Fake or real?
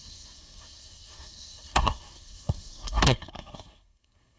fake